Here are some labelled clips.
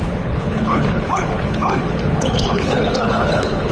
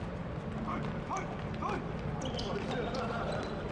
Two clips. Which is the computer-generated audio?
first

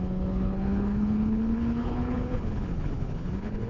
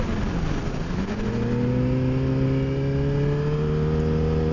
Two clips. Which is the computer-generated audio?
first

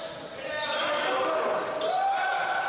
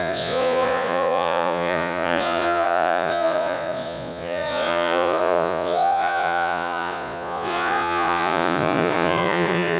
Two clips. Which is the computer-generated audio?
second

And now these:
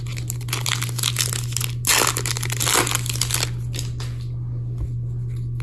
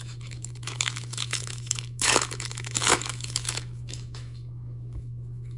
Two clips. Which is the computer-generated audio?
second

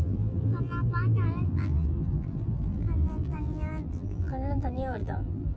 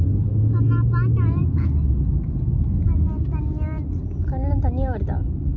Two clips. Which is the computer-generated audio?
first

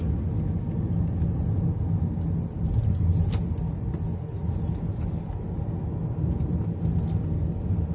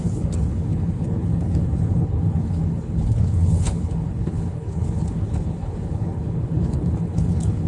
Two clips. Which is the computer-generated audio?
second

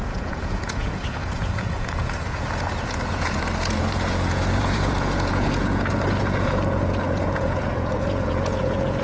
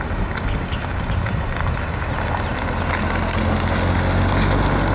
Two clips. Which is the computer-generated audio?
first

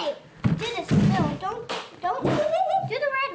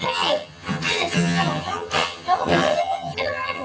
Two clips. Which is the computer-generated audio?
second